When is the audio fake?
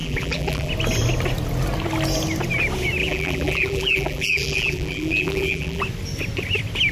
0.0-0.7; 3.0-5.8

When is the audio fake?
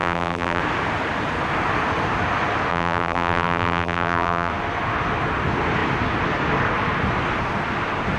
0.0-0.6; 2.7-4.5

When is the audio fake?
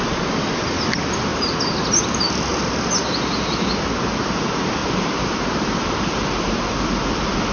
1.3-2.0; 2.5-3.0; 4.8-7.0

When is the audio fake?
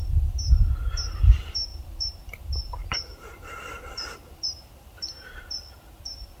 0.0-0.5; 1.7-5.5